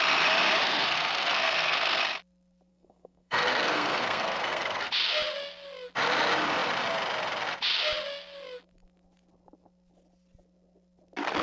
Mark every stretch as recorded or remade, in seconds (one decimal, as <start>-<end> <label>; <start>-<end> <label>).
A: 0.0-0.6 recorded; 0.6-2.0 remade; 2.0-2.7 recorded; 2.7-4.9 remade; 4.9-11.4 recorded